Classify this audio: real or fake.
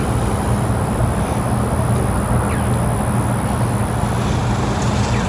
real